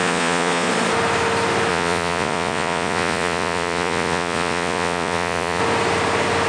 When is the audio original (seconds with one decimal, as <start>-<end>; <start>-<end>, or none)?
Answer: 0.7-1.7; 5.6-6.5